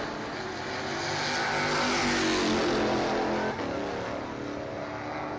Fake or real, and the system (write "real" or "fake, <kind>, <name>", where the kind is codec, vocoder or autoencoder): real